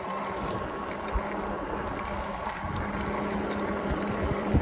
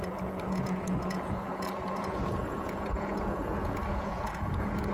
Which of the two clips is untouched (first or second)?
first